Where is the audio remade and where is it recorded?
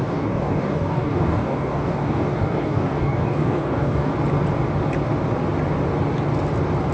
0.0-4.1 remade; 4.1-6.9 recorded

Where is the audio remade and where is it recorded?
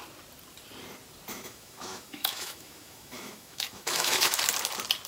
0.0-1.3 recorded; 1.3-4.4 remade; 4.4-5.1 recorded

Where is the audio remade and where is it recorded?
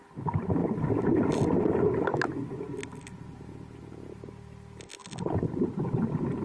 0.0-6.4 recorded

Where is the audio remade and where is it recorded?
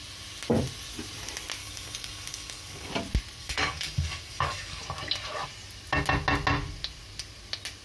0.0-1.6 recorded; 1.6-2.9 remade; 2.9-3.4 recorded; 3.4-4.8 remade; 4.8-7.8 recorded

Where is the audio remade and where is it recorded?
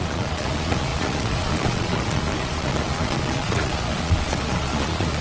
0.0-5.2 remade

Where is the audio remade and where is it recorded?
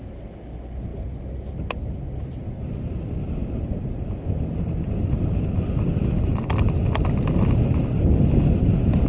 0.0-9.1 recorded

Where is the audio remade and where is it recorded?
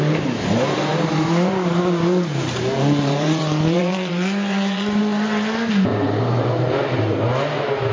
0.0-0.9 recorded; 0.9-5.0 remade; 5.0-5.9 recorded; 5.9-7.0 remade; 7.0-7.9 recorded